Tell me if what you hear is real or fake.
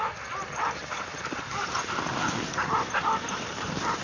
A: real